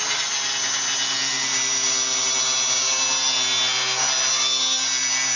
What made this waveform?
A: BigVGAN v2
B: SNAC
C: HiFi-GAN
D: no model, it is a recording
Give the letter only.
D